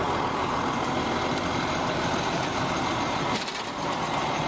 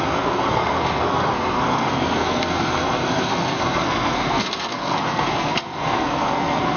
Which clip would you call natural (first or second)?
first